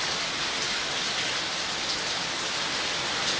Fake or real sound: real